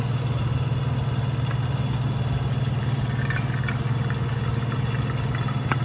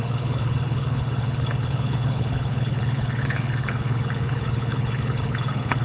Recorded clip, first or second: first